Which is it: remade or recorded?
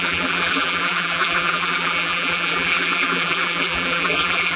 remade